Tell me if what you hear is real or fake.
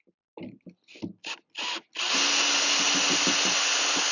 real